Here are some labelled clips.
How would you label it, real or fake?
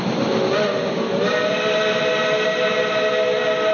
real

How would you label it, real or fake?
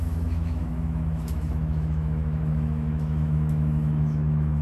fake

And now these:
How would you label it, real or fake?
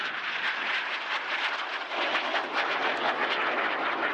real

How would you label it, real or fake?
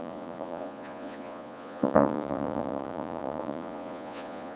fake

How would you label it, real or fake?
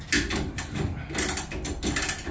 real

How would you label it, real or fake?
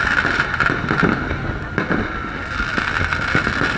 real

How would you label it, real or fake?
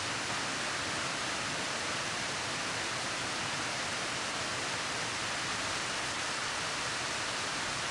real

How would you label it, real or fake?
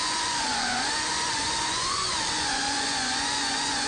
fake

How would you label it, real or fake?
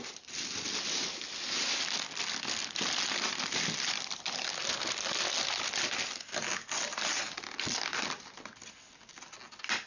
real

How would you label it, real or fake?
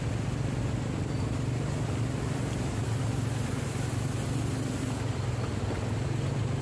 real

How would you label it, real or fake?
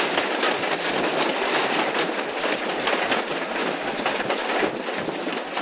real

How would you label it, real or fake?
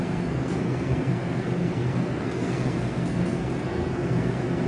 fake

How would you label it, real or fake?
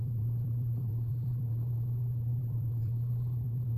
fake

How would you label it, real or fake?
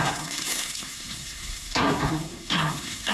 fake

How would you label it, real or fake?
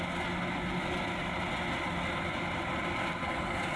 real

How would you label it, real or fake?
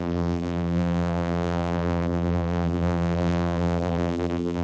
fake